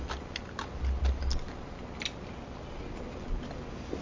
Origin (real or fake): real